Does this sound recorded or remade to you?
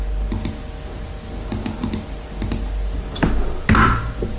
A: recorded